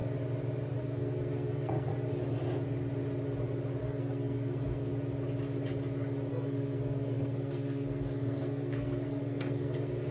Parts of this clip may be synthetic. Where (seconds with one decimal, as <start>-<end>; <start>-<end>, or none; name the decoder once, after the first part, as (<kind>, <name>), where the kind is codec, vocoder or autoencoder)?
0.8-1.9 (codec, SNAC); 3.8-4.9; 6.3-10.1